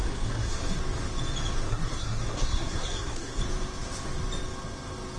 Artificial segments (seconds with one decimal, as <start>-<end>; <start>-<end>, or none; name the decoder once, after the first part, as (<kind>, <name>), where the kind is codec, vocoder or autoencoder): 0.0-0.8 (codec, SNAC); 1.7-3.4